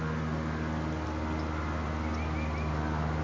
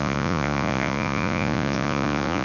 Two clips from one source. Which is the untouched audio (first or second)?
first